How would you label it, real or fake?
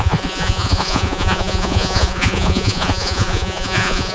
fake